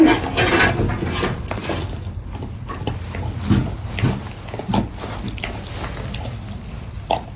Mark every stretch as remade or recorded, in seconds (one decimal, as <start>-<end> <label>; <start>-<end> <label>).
0.0-7.4 recorded